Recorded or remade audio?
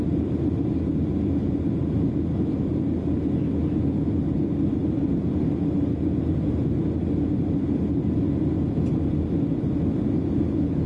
recorded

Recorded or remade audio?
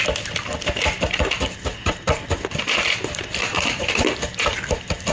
remade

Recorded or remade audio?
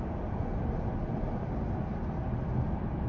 recorded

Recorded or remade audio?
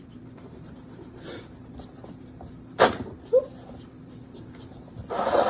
remade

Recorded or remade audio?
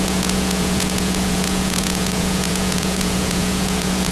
remade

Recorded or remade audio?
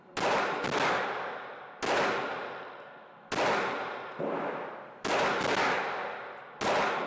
recorded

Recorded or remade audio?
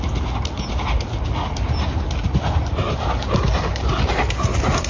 recorded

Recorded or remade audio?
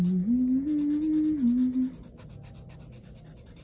recorded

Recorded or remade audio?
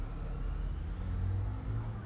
recorded